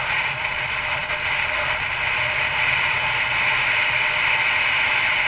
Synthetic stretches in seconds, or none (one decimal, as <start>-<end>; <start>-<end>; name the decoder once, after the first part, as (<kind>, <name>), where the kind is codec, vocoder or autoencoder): none